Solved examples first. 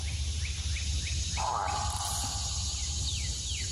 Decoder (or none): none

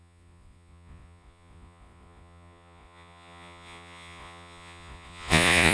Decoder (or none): vocoder, Vocos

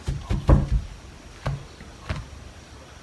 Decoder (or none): none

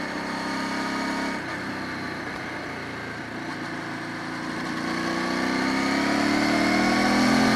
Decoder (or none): none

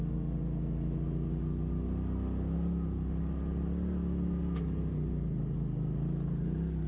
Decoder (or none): none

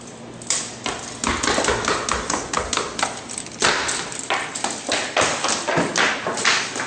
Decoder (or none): none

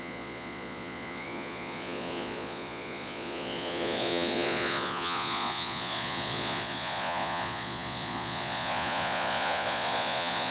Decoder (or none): vocoder, Vocos